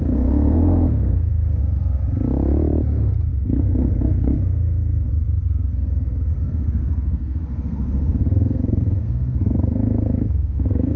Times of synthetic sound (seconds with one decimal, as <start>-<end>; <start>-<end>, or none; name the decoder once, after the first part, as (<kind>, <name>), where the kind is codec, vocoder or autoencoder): 0.0-1.6 (codec, SNAC); 3.3-5.1; 5.7-11.0